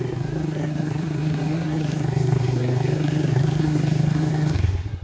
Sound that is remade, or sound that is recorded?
remade